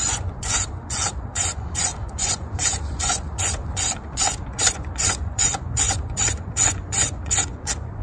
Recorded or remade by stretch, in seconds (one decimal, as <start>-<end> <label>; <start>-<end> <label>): 0.0-8.0 remade